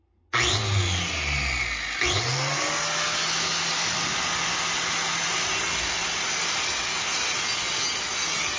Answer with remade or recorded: recorded